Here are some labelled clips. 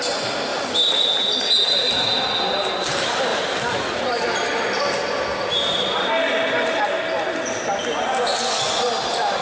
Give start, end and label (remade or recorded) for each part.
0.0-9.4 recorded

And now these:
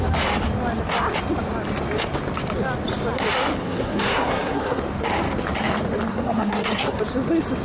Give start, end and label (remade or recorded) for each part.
0.0-3.6 recorded; 3.6-4.8 remade; 4.8-6.1 recorded; 6.1-7.0 remade; 7.0-7.6 recorded

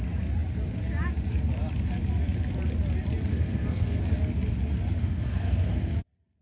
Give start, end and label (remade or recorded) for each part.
0.0-3.3 recorded; 3.3-4.0 remade; 4.0-5.0 recorded; 5.0-5.9 remade; 5.9-6.4 recorded

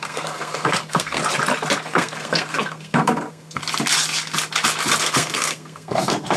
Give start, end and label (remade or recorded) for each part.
0.0-1.2 remade; 1.2-1.8 recorded; 1.8-3.6 remade; 3.6-5.0 recorded; 5.0-6.4 remade

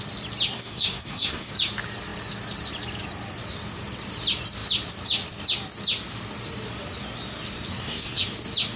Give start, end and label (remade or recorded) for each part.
0.0-0.5 recorded; 0.5-1.5 remade; 1.5-7.7 recorded; 7.7-8.2 remade; 8.2-8.8 recorded

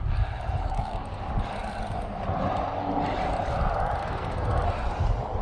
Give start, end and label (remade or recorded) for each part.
0.0-0.6 recorded; 0.6-1.2 remade; 1.2-4.0 recorded; 4.0-4.6 remade; 4.6-5.4 recorded